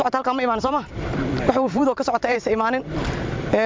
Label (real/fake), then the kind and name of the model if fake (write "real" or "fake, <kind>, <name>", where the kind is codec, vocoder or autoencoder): fake, vocoder, BigVGAN v2